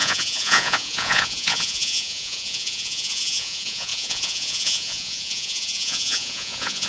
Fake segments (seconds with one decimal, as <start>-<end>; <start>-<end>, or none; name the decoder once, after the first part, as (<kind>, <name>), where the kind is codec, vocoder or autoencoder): 0.0-6.9 (vocoder, Vocos)